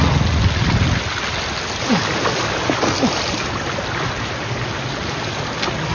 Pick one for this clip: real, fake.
real